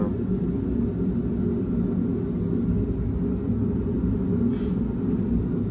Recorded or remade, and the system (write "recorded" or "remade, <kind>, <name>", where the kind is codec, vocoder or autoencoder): recorded